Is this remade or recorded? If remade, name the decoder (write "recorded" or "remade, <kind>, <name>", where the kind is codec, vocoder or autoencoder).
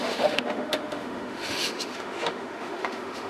remade, autoencoder, DAC-VAE